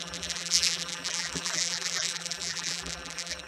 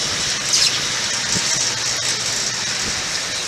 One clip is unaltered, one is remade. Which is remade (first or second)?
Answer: first